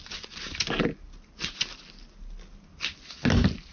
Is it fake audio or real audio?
real